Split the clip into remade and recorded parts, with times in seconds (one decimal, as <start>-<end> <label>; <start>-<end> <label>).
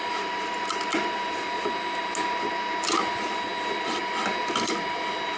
0.0-5.4 recorded